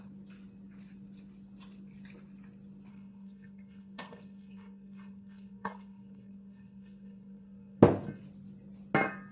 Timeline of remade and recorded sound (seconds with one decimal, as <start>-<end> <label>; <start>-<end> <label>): 0.0-2.9 recorded; 2.9-7.8 remade; 7.8-9.3 recorded